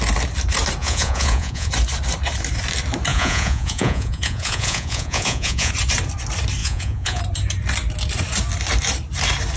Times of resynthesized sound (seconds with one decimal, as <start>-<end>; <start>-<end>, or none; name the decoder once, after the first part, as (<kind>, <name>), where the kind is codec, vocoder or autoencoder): 0.8-1.7 (vocoder, Vocos); 3.1-5.7; 6.6-7.2